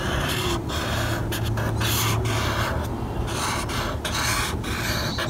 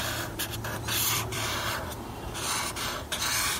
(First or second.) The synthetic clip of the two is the second